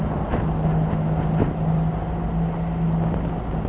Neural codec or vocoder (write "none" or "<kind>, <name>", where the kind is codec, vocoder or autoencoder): none